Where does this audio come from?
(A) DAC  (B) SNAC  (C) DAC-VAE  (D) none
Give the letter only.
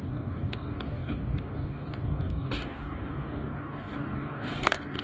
A